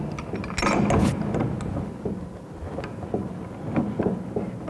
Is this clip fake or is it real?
real